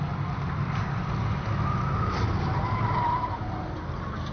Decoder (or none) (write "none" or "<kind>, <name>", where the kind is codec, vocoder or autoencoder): none